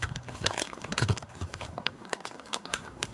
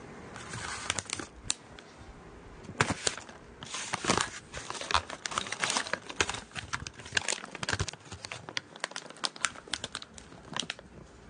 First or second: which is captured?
second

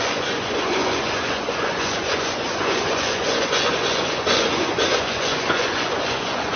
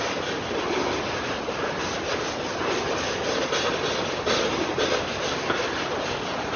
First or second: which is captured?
second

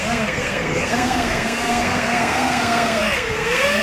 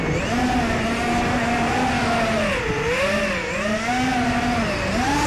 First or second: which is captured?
second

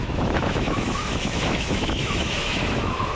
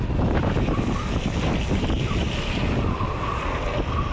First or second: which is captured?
second